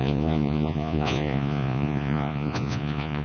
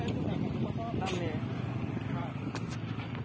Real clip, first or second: second